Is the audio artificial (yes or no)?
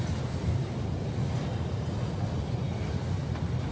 no